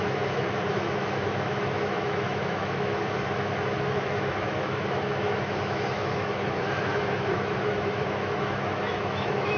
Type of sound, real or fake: fake